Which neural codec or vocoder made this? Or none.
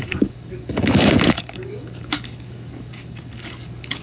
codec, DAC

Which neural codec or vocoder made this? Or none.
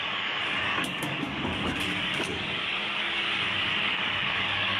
codec, DAC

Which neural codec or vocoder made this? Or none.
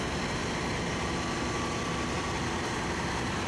none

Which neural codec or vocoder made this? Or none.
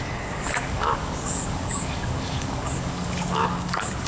codec, DAC